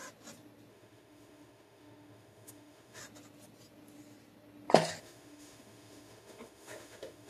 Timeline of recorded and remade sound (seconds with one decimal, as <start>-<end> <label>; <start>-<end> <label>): 0.0-0.7 recorded; 0.7-3.0 remade; 3.0-5.0 recorded; 5.0-7.3 remade